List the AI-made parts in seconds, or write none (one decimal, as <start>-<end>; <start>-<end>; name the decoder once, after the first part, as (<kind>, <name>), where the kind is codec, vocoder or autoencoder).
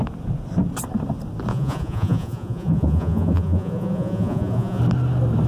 1.5-4.8 (vocoder, Vocos)